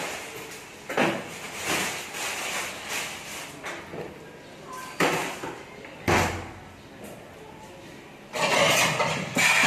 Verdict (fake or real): real